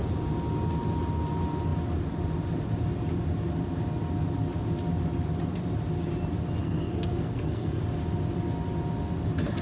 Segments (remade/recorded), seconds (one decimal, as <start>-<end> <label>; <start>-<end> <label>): 0.0-6.6 recorded; 6.6-7.8 remade; 7.8-9.6 recorded